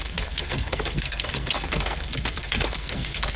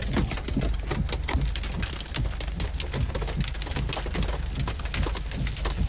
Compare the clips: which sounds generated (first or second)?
first